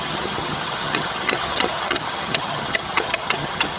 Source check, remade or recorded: remade